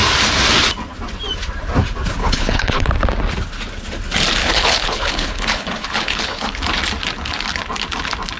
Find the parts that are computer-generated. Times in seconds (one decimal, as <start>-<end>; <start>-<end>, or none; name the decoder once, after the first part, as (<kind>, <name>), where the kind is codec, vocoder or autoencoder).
2.2-2.9 (codec, HILCodec); 4.4-6.6